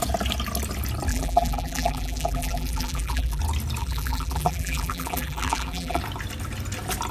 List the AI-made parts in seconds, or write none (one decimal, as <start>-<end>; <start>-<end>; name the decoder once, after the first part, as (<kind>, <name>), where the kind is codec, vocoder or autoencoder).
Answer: 1.1-3.4 (vocoder, BigVGAN v2); 3.8-6.0